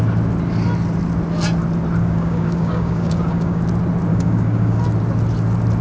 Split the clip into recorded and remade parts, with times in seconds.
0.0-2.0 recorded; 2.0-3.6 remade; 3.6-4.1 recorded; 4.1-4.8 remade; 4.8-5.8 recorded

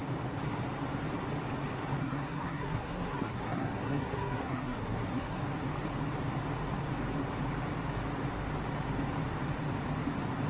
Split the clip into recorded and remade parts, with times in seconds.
0.0-2.0 recorded; 2.0-5.4 remade; 5.4-10.5 recorded

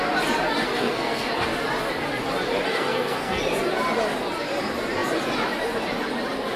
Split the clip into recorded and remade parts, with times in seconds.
0.0-0.6 recorded; 0.6-1.3 remade; 1.3-2.7 recorded; 2.7-3.4 remade; 3.4-6.6 recorded

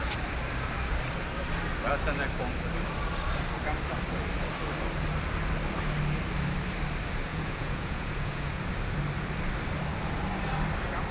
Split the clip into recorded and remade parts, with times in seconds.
0.0-7.3 recorded; 7.3-8.6 remade; 8.6-11.1 recorded

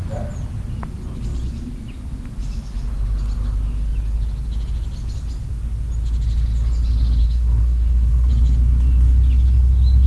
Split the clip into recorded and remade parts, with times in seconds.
0.0-7.2 recorded; 7.2-8.3 remade; 8.3-10.1 recorded

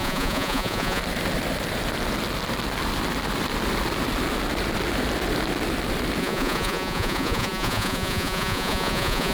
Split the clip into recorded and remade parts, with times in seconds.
0.0-1.0 remade; 1.0-6.2 recorded; 6.2-9.3 remade

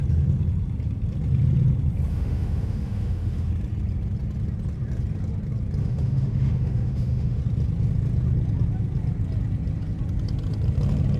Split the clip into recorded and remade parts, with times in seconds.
0.0-2.1 recorded; 2.1-3.5 remade; 3.5-5.8 recorded; 5.8-7.4 remade; 7.4-11.2 recorded